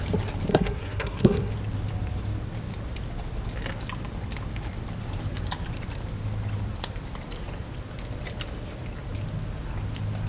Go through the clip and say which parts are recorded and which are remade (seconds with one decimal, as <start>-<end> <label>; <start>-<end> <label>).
0.0-0.5 recorded; 0.5-1.5 remade; 1.5-10.3 recorded

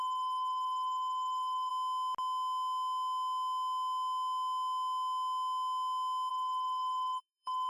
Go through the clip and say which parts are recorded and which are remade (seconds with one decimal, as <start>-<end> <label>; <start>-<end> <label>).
0.0-1.7 remade; 1.7-6.3 recorded; 6.3-7.7 remade

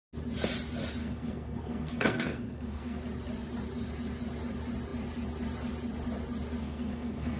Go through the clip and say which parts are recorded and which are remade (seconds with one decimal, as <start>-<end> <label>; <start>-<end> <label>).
0.0-1.0 recorded; 1.0-3.0 remade; 3.0-6.6 recorded; 6.6-7.4 remade

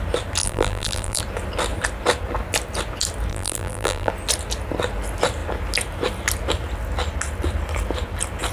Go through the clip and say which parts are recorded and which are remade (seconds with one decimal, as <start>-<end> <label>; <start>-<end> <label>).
0.0-0.4 recorded; 0.4-1.2 remade; 1.2-3.3 recorded; 3.3-4.1 remade; 4.1-8.5 recorded

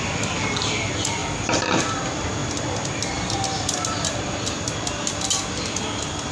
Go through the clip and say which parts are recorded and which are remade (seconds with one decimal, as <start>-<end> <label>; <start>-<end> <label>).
0.0-6.3 recorded

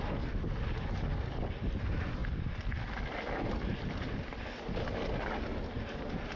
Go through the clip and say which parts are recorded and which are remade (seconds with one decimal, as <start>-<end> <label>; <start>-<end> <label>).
0.0-6.4 recorded

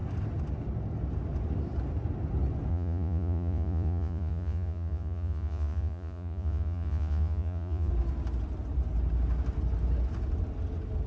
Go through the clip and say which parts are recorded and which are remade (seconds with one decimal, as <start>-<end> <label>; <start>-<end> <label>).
0.0-2.7 recorded; 2.7-7.9 remade; 7.9-11.1 recorded

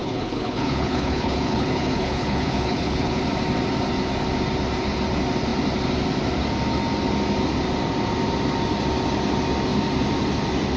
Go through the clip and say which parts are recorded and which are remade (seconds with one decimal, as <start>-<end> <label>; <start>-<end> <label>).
0.0-3.2 remade; 3.2-10.8 recorded